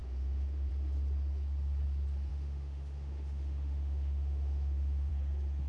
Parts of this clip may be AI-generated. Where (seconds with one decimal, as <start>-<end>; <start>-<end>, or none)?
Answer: 0.0-0.7; 2.3-5.1